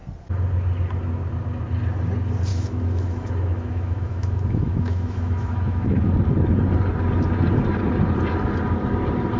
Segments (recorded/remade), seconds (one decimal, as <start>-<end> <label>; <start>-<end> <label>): 0.0-2.5 recorded; 2.5-6.0 remade; 6.0-9.4 recorded